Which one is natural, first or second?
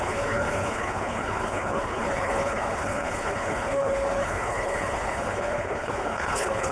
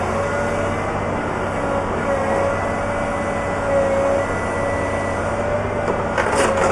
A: second